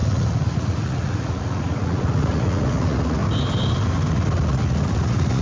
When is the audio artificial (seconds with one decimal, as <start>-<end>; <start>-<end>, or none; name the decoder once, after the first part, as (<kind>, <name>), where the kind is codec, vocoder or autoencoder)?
0.0-3.2 (vocoder, Vocos); 4.1-5.4